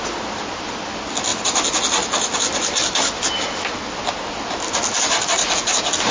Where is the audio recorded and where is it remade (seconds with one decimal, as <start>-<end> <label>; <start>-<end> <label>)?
0.0-6.1 recorded